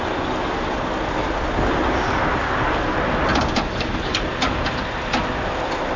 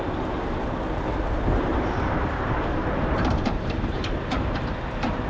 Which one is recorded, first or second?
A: first